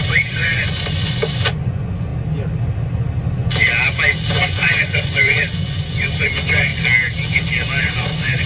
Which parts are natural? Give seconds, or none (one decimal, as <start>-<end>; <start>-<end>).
2.1-4.3; 6.7-7.8